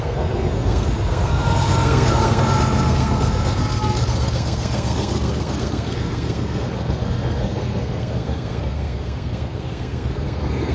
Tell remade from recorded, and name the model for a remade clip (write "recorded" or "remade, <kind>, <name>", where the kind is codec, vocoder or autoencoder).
remade, codec, SNAC